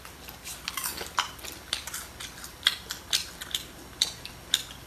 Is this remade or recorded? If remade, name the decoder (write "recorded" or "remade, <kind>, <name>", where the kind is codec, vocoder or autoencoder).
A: recorded